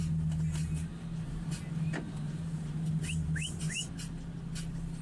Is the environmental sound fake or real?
real